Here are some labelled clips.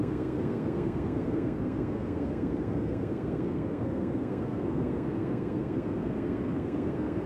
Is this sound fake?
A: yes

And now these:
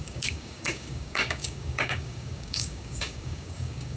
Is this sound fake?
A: yes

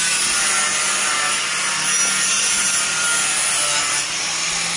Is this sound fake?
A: no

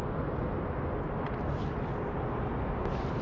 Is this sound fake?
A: no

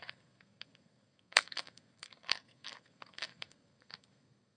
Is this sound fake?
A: yes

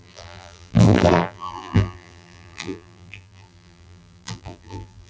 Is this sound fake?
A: yes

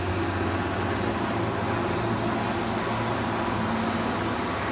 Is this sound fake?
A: no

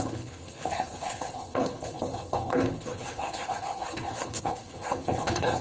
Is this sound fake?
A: yes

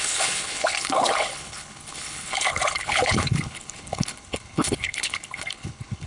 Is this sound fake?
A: yes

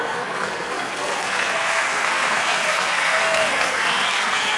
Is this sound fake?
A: yes